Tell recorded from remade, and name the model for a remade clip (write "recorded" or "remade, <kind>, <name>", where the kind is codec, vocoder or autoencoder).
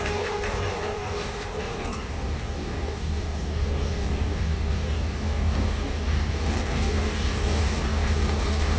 remade, codec, DAC